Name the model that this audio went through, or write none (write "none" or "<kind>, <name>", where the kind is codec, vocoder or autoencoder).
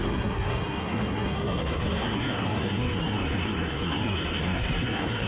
codec, SNAC